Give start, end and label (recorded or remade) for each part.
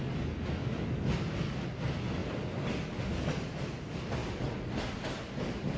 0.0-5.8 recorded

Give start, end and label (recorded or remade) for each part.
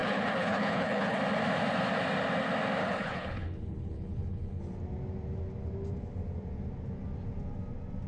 0.0-1.2 remade; 1.2-2.8 recorded; 2.8-4.6 remade; 4.6-8.1 recorded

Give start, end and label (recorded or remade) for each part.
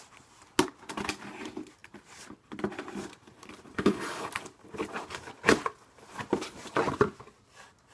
0.0-3.7 recorded; 3.7-4.3 remade; 4.3-7.9 recorded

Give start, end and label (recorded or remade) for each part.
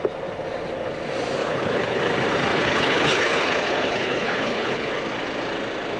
0.0-1.4 recorded; 1.4-2.0 remade; 2.0-2.5 recorded; 2.5-4.9 remade; 4.9-6.0 recorded